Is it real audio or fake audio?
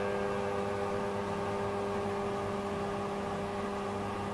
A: real